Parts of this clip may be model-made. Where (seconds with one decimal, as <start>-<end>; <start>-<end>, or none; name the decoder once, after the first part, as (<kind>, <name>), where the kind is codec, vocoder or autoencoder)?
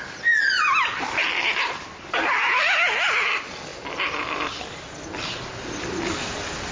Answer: none